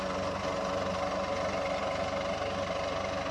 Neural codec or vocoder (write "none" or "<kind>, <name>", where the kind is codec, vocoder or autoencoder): none